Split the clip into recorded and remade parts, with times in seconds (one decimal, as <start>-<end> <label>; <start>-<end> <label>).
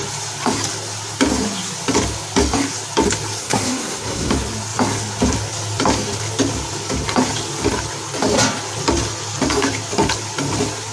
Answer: 0.0-3.4 recorded; 3.4-4.3 remade; 4.3-10.9 recorded